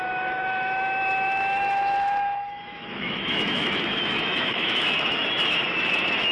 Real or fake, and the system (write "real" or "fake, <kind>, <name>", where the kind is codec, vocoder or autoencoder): fake, autoencoder, DAC-VAE